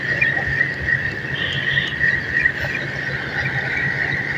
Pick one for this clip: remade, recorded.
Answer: recorded